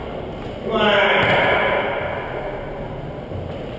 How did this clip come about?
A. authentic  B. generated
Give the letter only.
A